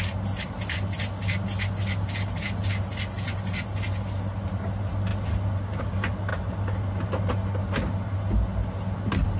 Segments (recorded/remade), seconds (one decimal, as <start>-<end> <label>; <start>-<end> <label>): 0.0-9.4 recorded